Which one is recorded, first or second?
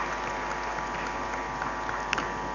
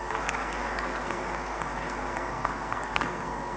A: first